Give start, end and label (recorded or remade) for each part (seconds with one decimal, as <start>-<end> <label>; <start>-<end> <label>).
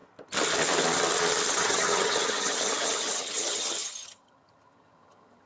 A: 0.0-1.5 recorded; 1.5-5.5 remade